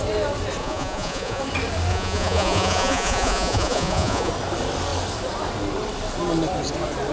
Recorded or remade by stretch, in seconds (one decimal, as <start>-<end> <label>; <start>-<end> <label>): 0.0-0.6 recorded; 0.6-1.4 remade; 1.4-1.9 recorded; 1.9-4.3 remade; 4.3-7.1 recorded